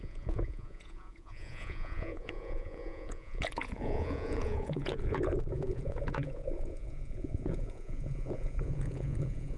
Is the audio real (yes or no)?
no